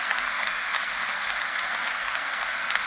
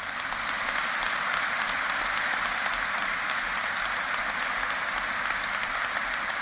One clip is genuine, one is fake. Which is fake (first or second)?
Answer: first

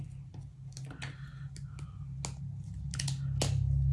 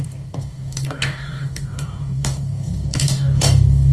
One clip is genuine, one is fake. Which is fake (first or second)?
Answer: second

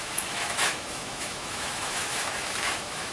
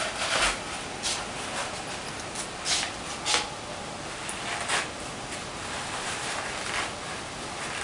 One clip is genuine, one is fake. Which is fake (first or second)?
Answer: first